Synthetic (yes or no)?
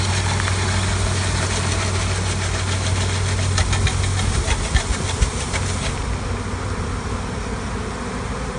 no